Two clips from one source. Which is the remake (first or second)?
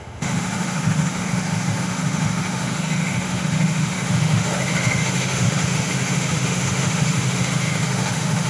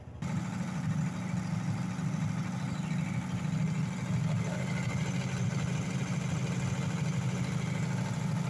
first